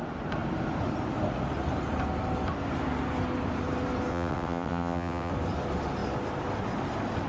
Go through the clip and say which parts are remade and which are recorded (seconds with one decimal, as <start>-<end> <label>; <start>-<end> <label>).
0.0-4.1 recorded; 4.1-5.3 remade; 5.3-7.3 recorded